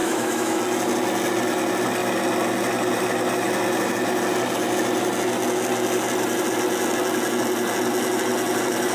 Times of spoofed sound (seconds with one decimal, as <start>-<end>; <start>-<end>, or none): 0.0-0.6